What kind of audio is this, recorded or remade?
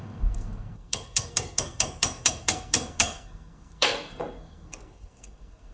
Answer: remade